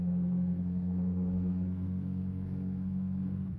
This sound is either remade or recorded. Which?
remade